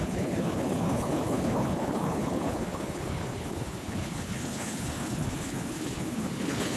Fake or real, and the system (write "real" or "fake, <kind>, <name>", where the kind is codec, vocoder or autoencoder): fake, codec, HILCodec